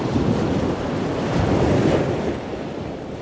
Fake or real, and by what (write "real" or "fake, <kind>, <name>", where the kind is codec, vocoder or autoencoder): fake, vocoder, BigVGAN v2